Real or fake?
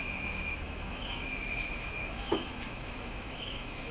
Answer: fake